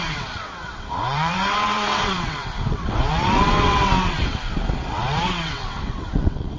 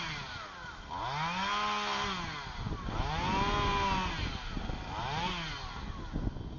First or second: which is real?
second